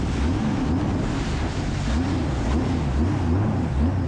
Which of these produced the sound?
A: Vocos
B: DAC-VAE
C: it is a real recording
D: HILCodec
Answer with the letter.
C